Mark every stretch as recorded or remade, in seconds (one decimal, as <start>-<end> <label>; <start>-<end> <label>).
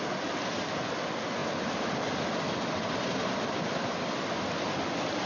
0.0-5.3 recorded